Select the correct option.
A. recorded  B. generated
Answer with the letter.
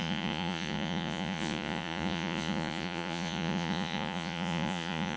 B